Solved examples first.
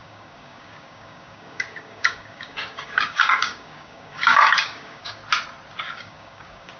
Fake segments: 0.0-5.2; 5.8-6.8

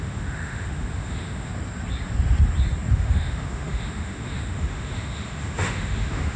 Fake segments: 0.0-1.5; 2.9-6.4

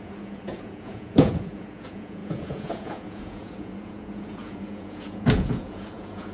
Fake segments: 0.0-6.3

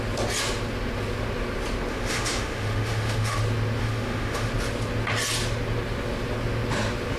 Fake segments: 1.9-3.4; 3.8-4.5